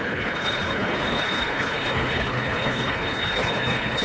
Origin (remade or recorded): remade